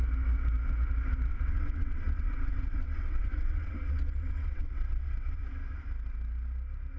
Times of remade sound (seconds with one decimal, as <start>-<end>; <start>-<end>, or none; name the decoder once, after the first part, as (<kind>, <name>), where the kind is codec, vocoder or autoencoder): 1.3-5.4 (vocoder, WaveNeXt)